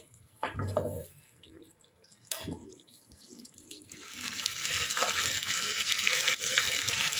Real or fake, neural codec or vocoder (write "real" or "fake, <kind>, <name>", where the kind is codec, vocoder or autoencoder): fake, codec, SNAC